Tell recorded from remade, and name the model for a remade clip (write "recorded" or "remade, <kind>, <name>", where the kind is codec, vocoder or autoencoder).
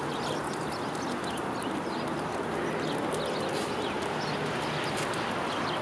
recorded